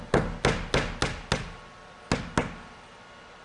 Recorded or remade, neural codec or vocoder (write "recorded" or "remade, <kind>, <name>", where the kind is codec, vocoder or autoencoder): recorded